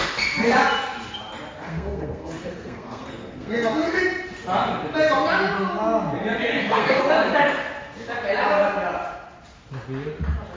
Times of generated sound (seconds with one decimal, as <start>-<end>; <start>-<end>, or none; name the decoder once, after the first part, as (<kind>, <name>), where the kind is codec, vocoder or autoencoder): 1.6-4.0 (codec, SNAC); 6.5-7.0